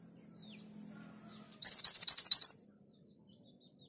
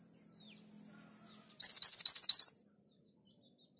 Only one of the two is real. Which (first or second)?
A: second